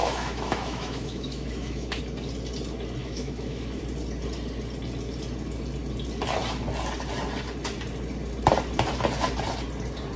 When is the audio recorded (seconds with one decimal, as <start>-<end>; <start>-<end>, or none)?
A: 2.0-3.0; 3.8-10.2